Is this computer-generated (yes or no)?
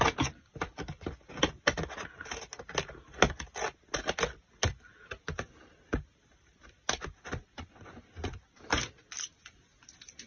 no